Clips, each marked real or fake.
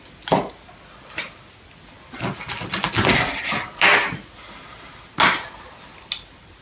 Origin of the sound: real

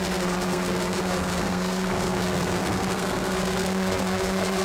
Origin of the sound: fake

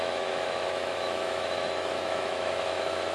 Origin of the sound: fake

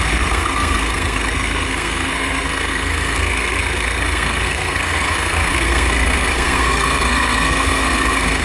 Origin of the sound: fake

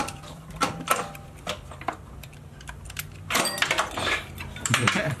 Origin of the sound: fake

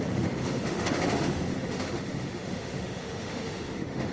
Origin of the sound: fake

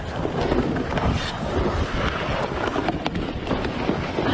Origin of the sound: real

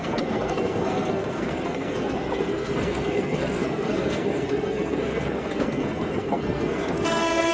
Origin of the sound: fake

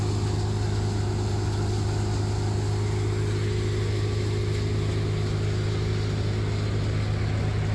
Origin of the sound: real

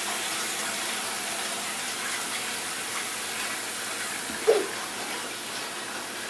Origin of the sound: real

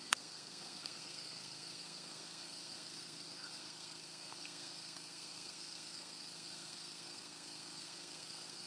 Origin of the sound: fake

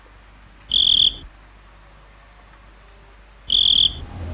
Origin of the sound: real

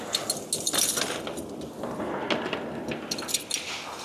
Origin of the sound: real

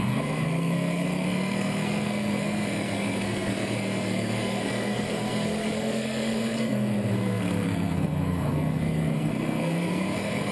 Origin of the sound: fake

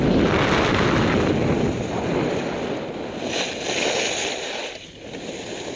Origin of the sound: real